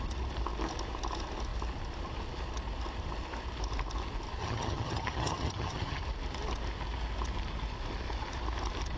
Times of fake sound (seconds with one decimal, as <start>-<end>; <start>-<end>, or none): 4.4-6.0